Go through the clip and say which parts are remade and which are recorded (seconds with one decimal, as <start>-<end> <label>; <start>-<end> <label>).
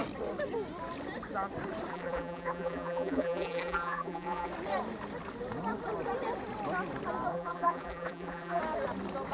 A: 0.0-1.9 recorded; 1.9-4.5 remade; 4.5-7.3 recorded; 7.3-8.6 remade; 8.6-9.3 recorded